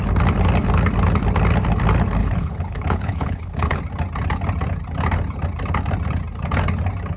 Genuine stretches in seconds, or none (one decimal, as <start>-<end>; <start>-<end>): 0.0-2.2; 3.8-7.2